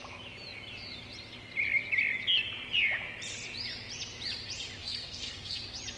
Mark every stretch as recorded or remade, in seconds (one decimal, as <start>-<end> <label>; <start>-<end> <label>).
0.0-4.8 recorded; 4.8-5.6 remade; 5.6-6.0 recorded